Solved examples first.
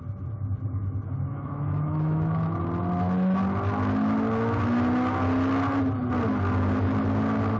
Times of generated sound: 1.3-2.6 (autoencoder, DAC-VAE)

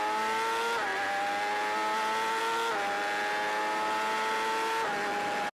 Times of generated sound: none

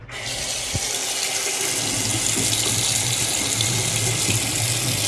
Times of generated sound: none

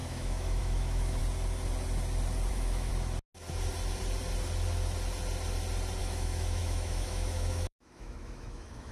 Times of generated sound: 0.0-1.2 (autoencoder, DAC-VAE); 2.5-2.9; 6.0-8.9